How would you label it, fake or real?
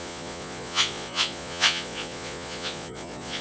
fake